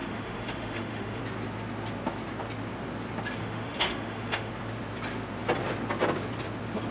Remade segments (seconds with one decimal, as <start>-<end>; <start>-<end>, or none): 0.0-1.2; 3.4-4.5